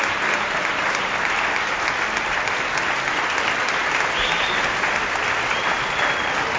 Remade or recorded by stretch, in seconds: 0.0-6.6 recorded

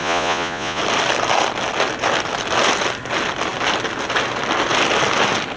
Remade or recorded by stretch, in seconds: 0.0-0.8 remade; 0.8-5.6 recorded

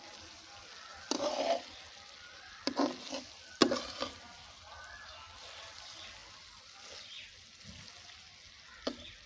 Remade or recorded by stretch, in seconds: 0.0-9.3 recorded

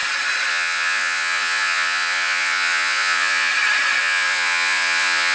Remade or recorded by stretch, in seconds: 0.0-0.5 recorded; 0.5-3.5 remade; 3.5-4.0 recorded; 4.0-5.3 remade

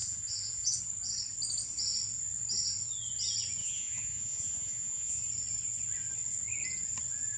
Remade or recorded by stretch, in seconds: 0.0-0.8 remade; 0.8-3.6 recorded; 3.6-5.2 remade; 5.2-7.4 recorded

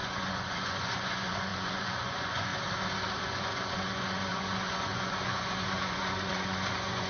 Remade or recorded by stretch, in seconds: 0.0-2.5 remade; 2.5-3.2 recorded; 3.2-7.1 remade

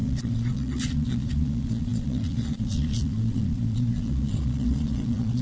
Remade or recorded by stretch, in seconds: 0.0-5.4 remade